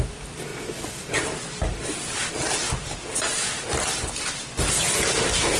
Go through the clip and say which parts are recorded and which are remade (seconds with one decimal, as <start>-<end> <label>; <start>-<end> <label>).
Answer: 0.0-5.6 recorded